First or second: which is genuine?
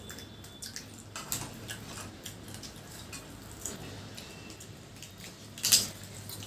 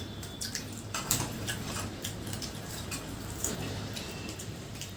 first